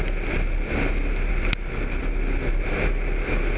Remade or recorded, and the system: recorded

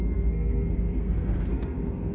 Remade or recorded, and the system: remade, codec, SNAC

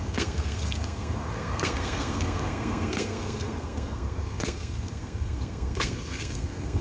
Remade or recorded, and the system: remade, codec, SNAC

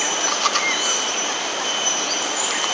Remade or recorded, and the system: recorded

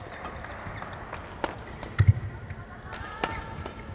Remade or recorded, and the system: recorded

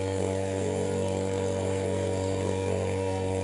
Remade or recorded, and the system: remade, codec, SNAC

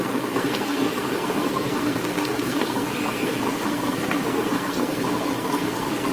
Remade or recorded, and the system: remade, codec, SNAC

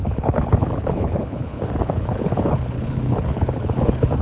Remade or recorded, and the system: remade, codec, HILCodec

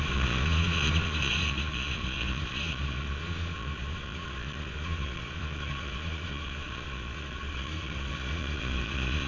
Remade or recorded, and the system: remade, vocoder, Vocos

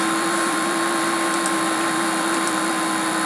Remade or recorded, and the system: remade, vocoder, BigVGAN v2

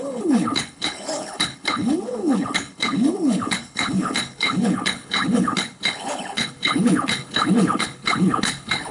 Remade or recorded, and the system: remade, codec, HILCodec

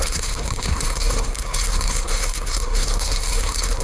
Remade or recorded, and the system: remade, codec, SNAC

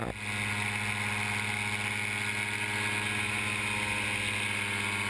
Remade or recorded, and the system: recorded